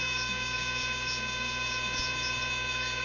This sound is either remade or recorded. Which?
remade